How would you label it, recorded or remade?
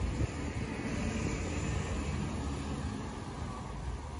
recorded